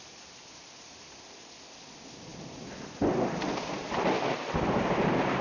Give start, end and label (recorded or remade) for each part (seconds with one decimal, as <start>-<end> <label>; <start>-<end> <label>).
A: 0.0-2.3 recorded; 2.3-5.4 remade